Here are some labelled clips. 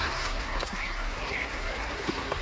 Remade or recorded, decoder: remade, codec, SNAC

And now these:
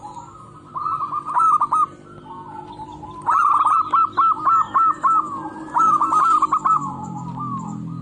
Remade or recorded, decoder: recorded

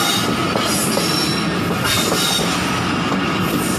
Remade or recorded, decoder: recorded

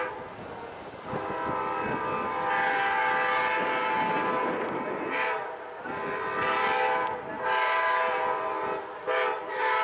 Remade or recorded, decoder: recorded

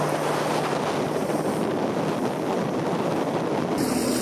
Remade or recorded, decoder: recorded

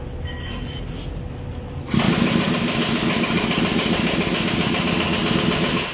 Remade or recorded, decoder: recorded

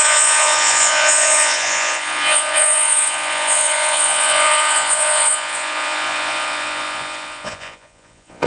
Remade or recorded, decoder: remade, vocoder, Vocos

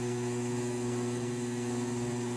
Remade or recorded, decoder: remade, codec, SNAC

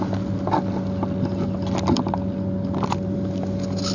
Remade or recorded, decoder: recorded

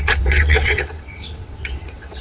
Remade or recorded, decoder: remade, vocoder, WaveNeXt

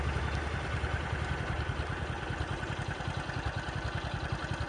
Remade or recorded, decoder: recorded